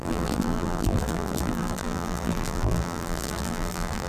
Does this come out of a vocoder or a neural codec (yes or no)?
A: yes